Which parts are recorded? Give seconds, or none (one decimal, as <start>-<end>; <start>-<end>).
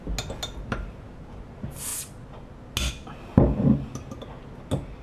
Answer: 0.0-5.0